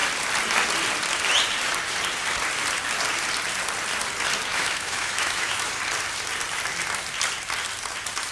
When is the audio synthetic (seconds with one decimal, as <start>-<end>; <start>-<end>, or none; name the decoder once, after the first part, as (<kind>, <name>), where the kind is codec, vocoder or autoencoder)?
4.5-5.7 (autoencoder, DAC-VAE)